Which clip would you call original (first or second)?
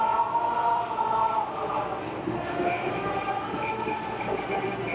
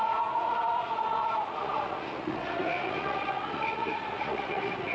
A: first